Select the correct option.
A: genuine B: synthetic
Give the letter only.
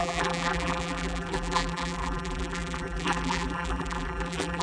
B